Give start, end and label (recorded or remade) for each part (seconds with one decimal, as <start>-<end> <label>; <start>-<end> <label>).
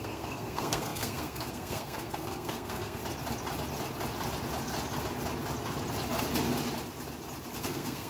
0.0-3.0 remade; 3.0-7.6 recorded; 7.6-8.1 remade